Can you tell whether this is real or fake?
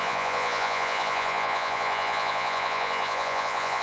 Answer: fake